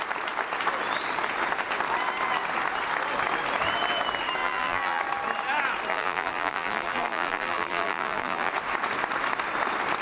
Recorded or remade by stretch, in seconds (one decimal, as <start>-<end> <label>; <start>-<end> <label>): 0.0-4.4 recorded; 4.4-5.0 remade; 5.0-5.9 recorded; 5.9-8.5 remade; 8.5-10.0 recorded